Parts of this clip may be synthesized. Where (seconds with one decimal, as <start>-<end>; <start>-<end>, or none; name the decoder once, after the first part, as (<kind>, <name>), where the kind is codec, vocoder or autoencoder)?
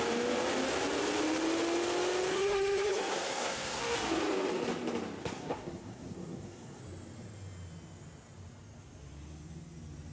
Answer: 2.3-3.8 (codec, SNAC); 5.2-6.8